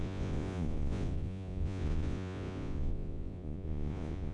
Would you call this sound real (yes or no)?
no